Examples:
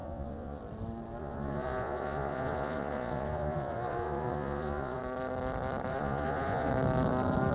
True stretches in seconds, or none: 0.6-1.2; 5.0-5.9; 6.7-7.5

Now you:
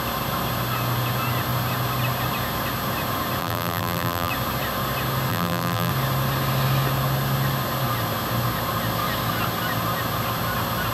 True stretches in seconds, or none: 0.0-3.4; 4.3-5.3; 5.9-10.9

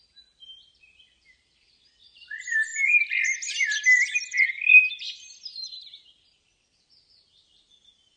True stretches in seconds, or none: 2.7-3.6

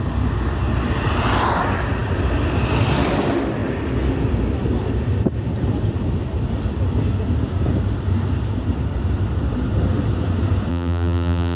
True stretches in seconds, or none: 0.0-10.7

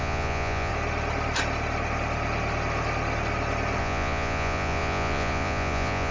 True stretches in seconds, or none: 0.7-3.8

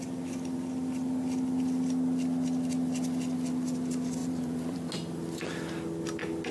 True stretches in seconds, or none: 0.0-4.2; 4.9-6.5

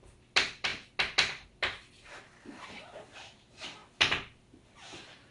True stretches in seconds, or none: 0.0-5.3